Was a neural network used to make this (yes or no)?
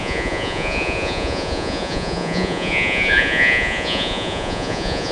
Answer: yes